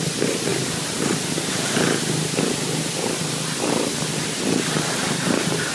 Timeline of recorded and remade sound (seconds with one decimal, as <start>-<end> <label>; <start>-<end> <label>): 0.0-5.7 recorded